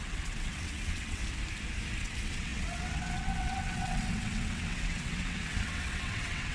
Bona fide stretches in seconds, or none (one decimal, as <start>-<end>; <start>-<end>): 1.2-2.0